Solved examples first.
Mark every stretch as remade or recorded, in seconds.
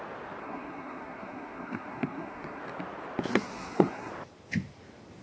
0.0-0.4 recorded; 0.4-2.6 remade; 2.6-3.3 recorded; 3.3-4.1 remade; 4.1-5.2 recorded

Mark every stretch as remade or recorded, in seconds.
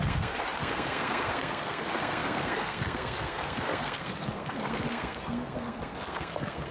0.0-6.7 remade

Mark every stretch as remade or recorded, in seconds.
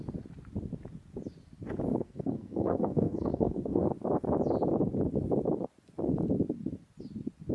0.0-1.9 recorded; 1.9-3.9 remade; 3.9-7.5 recorded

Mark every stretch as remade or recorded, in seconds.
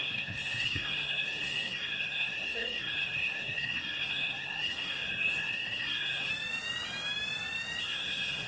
0.0-6.3 remade; 6.3-7.8 recorded; 7.8-8.5 remade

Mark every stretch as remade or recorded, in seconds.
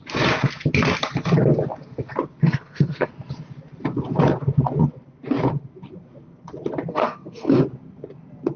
0.0-2.4 recorded; 2.4-3.1 remade; 3.1-6.9 recorded; 6.9-7.6 remade; 7.6-8.6 recorded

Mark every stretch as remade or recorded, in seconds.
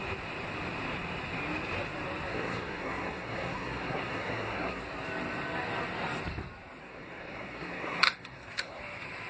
0.0-2.3 recorded; 2.3-4.8 remade; 4.8-6.8 recorded; 6.8-8.8 remade; 8.8-9.3 recorded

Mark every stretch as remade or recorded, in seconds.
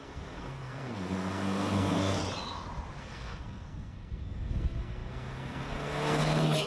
0.0-2.2 remade; 2.2-3.0 recorded; 3.0-6.7 remade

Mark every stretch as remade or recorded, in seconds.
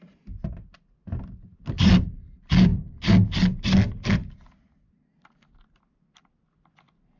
0.0-7.2 recorded